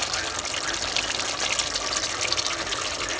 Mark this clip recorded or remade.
recorded